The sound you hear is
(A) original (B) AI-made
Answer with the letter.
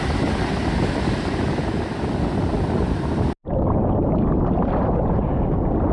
A